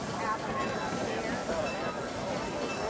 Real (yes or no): yes